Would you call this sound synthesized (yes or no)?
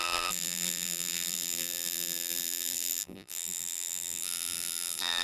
yes